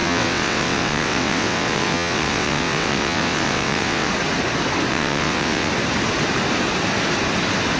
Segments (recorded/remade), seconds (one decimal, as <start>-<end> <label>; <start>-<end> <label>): 0.0-4.1 remade; 4.1-4.9 recorded; 4.9-5.7 remade; 5.7-7.8 recorded

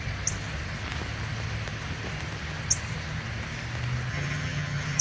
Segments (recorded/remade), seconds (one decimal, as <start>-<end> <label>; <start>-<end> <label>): 0.0-4.1 recorded; 4.1-5.0 remade

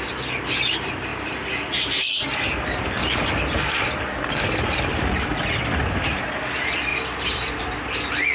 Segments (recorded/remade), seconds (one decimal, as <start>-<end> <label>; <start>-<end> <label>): 0.0-6.9 recorded; 6.9-7.6 remade; 7.6-8.3 recorded

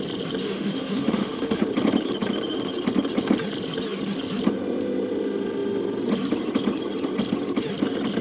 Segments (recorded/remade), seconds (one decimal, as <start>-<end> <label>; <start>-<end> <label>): 0.0-0.4 recorded; 0.4-1.6 remade; 1.6-8.2 recorded

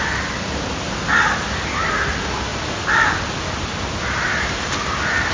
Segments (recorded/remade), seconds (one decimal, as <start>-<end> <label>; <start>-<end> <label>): 0.0-5.3 recorded

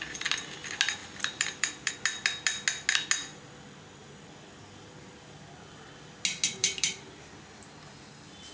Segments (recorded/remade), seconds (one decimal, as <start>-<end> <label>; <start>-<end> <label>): 0.0-1.0 recorded; 1.0-1.9 remade; 1.9-6.6 recorded; 6.6-7.2 remade; 7.2-8.5 recorded

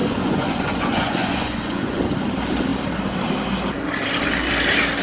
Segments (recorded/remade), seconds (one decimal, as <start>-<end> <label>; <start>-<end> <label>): 0.0-2.0 remade; 2.0-5.0 recorded